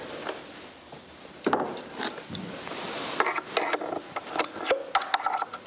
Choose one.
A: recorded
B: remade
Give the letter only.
A